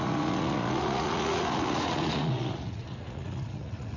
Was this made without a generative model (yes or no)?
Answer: no